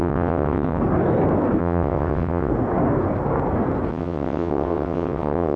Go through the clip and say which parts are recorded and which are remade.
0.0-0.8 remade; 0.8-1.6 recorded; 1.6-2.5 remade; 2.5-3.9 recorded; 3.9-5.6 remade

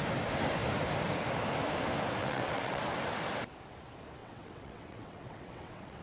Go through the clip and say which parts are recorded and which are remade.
0.0-2.2 recorded; 2.2-2.8 remade; 2.8-4.2 recorded; 4.2-6.0 remade

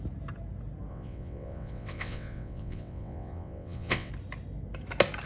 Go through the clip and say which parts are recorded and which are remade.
0.0-0.9 recorded; 0.9-4.1 remade; 4.1-5.3 recorded

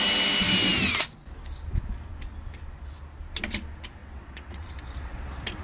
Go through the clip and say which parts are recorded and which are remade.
0.0-4.0 recorded; 4.0-4.7 remade; 4.7-5.6 recorded